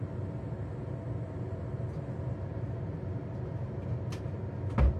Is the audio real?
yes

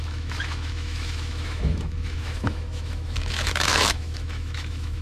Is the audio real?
no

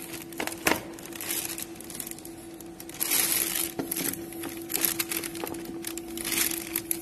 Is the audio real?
yes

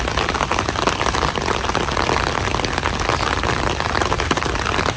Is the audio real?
yes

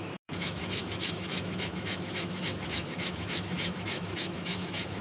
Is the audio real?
no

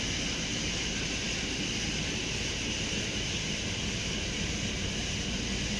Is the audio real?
yes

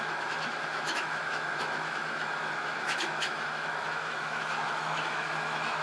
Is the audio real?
no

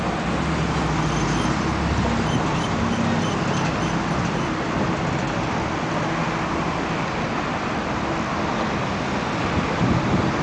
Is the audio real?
yes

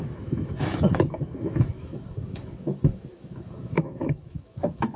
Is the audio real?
no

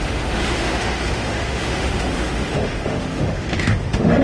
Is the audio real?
no